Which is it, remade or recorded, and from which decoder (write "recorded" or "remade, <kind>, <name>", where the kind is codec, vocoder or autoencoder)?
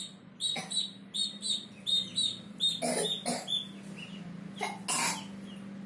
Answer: recorded